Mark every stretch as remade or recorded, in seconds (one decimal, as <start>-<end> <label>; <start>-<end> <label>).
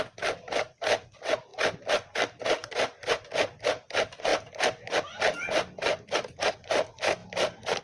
0.0-2.6 recorded; 2.6-3.1 remade; 3.1-7.8 recorded